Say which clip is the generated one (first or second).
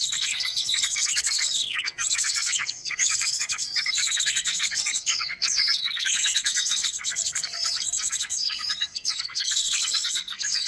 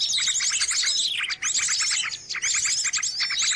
first